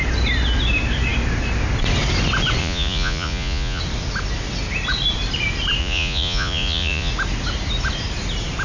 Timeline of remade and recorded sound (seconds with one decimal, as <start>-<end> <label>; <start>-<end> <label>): 0.0-2.6 recorded; 2.6-3.8 remade; 3.8-5.8 recorded; 5.8-7.1 remade; 7.1-8.6 recorded